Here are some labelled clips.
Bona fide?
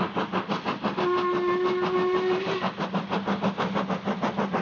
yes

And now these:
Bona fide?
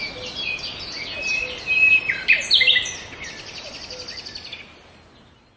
yes